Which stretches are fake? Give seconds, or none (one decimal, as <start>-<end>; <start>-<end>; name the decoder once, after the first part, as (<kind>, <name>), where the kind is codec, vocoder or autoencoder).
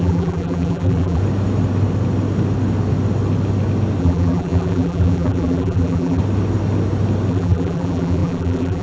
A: 0.0-1.2 (vocoder, BigVGAN v2); 4.0-6.2; 7.3-8.8